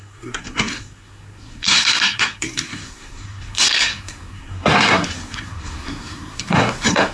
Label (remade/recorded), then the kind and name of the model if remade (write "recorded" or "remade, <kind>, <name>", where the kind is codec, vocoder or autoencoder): remade, codec, SNAC